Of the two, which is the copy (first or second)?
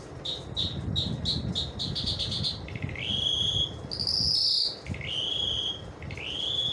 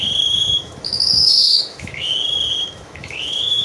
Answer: second